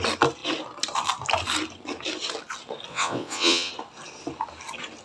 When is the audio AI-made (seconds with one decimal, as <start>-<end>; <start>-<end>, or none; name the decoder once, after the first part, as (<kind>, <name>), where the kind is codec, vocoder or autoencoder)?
2.9-3.7 (vocoder, WaveNeXt)